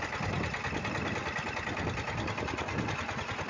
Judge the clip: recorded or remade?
recorded